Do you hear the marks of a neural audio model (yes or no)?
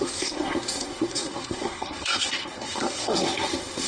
yes